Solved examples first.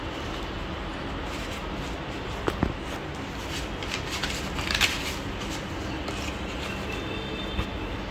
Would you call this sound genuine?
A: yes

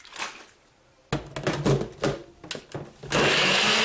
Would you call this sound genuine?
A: yes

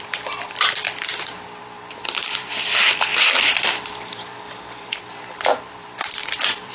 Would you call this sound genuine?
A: no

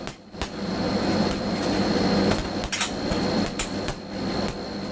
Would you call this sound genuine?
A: yes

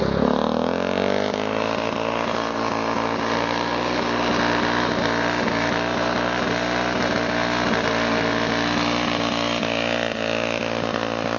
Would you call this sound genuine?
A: yes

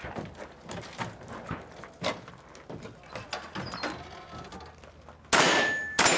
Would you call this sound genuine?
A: yes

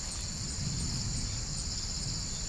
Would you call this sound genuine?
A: yes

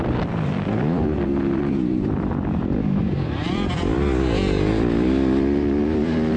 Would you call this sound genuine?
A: no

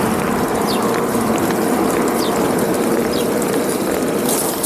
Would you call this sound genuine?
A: yes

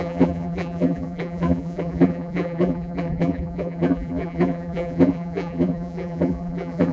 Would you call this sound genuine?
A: no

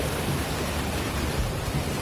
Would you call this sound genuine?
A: no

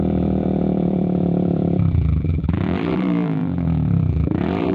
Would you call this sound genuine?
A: no